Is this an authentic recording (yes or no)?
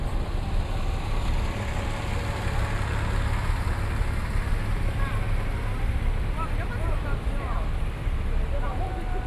yes